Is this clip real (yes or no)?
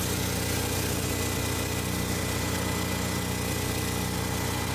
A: yes